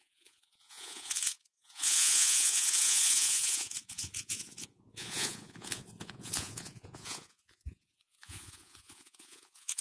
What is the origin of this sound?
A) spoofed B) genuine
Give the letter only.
A